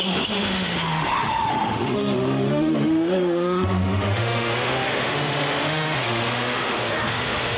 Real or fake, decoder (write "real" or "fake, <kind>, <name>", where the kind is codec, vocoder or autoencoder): fake, autoencoder, DAC-VAE